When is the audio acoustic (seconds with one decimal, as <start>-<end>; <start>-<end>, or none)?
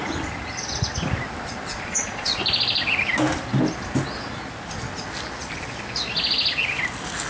0.0-1.7; 2.4-7.3